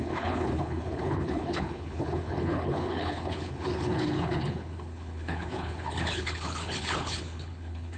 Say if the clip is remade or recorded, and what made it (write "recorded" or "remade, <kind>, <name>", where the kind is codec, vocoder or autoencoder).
remade, codec, HILCodec